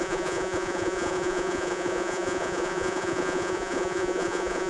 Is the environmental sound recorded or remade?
remade